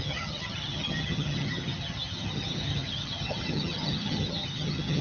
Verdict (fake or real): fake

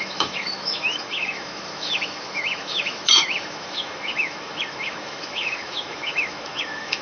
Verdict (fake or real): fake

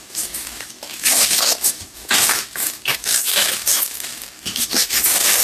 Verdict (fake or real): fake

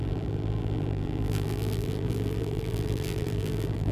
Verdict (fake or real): fake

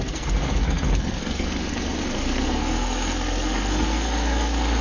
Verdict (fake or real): fake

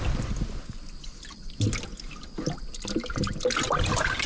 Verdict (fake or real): real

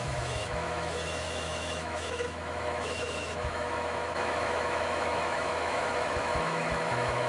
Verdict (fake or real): fake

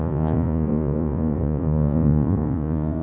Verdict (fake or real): fake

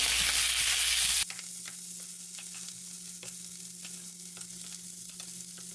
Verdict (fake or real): real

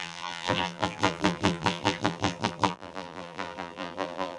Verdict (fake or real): fake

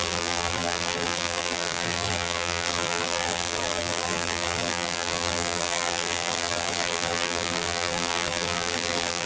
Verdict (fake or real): fake